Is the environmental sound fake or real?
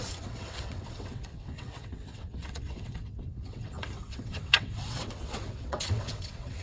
fake